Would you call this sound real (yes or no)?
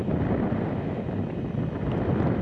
yes